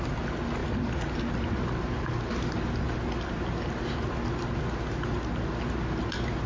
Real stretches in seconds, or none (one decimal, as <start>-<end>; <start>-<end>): 0.0-6.5